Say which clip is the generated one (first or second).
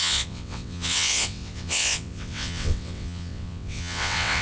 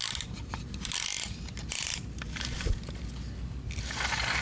first